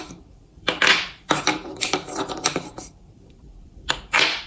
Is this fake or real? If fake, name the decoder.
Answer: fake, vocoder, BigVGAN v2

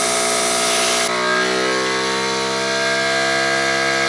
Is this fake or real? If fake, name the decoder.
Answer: real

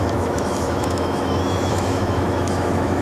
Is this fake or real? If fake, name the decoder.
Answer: fake, autoencoder, DAC-VAE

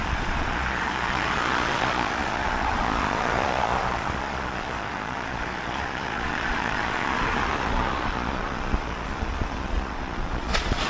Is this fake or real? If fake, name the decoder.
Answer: fake, vocoder, Vocos